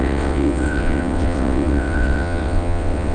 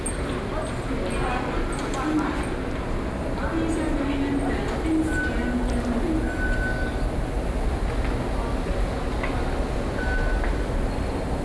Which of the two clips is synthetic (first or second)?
first